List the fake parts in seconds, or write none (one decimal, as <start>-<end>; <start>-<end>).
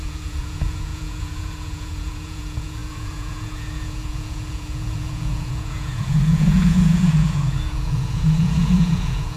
0.0-9.4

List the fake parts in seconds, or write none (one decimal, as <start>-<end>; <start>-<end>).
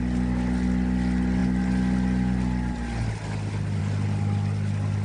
none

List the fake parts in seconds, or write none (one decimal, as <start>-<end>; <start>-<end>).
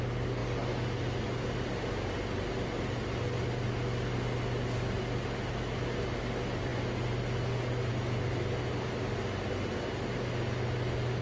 none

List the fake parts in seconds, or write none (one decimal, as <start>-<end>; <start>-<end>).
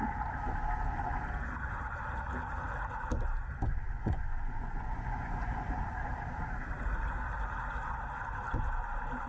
3.7-5.8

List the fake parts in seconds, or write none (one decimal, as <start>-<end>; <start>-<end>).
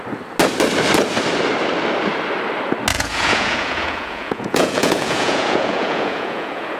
2.9-6.8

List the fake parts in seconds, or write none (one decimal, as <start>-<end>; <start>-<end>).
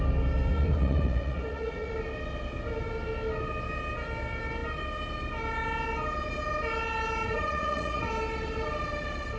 0.5-1.9; 7.2-8.1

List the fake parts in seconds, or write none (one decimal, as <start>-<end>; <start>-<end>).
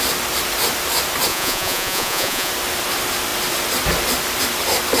1.3-2.5